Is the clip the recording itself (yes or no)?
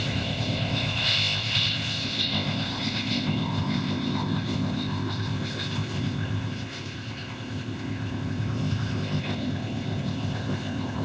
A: no